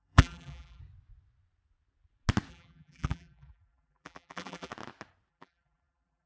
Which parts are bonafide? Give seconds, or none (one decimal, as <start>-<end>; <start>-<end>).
0.8-2.5; 4.7-5.3